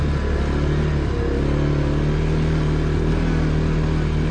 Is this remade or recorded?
recorded